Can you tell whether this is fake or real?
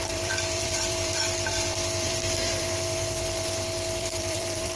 fake